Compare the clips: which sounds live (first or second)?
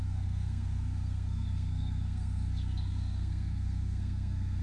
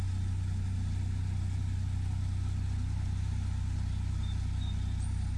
second